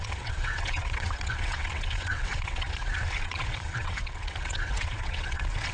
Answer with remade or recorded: remade